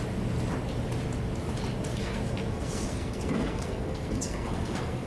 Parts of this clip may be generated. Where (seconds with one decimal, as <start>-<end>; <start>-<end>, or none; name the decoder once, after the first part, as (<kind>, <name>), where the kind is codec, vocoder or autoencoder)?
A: 1.9-5.1 (codec, SNAC)